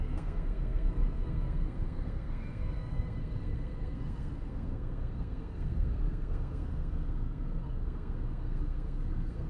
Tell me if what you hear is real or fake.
fake